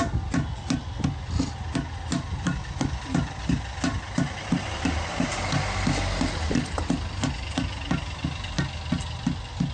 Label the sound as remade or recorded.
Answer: recorded